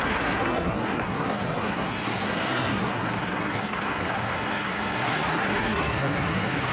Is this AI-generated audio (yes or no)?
yes